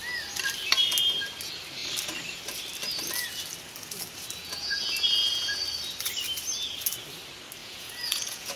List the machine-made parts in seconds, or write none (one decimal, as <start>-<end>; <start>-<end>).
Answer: 4.4-5.6; 7.6-8.6

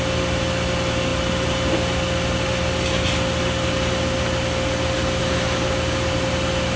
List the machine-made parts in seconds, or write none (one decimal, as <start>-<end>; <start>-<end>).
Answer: none

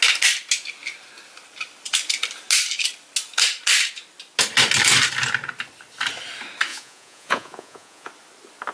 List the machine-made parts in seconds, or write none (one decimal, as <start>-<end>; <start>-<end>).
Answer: 6.7-8.1

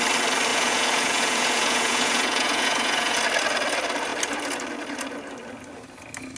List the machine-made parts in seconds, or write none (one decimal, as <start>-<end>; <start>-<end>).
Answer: 0.5-3.2

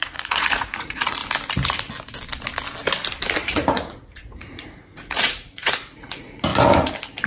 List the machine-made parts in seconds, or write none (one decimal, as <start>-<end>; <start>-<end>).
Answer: 0.0-1.2; 3.4-6.5

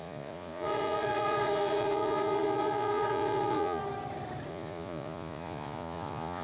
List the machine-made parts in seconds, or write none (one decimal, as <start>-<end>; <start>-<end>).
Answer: 0.0-3.8; 4.5-6.4

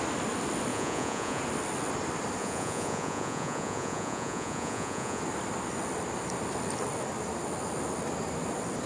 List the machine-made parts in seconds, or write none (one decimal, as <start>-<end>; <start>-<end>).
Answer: 0.7-1.4; 2.4-5.2

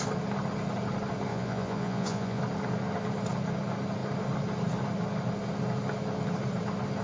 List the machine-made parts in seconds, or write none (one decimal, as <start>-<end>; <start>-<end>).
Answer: 1.3-2.4